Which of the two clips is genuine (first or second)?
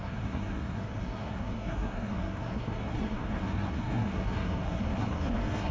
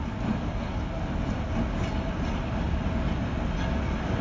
second